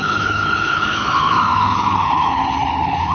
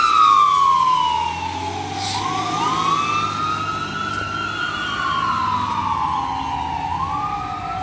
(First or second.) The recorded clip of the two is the second